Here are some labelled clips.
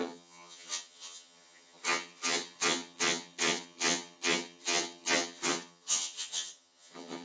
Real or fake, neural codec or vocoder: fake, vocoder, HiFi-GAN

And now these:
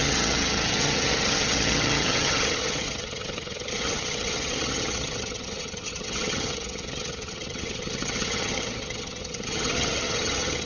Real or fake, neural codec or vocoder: fake, vocoder, HiFi-GAN